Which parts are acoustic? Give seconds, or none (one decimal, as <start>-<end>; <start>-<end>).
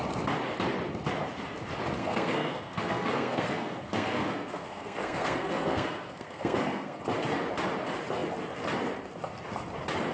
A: 0.0-2.0; 7.0-10.1